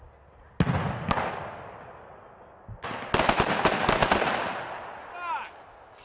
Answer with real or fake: real